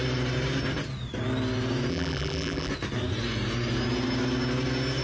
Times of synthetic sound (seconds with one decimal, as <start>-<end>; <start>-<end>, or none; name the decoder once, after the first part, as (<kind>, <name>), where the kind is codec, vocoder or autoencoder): 1.9-2.7 (vocoder, BigVGAN v2)